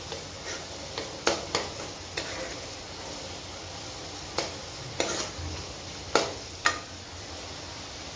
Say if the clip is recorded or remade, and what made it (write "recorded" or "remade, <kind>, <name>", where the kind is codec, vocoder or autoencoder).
recorded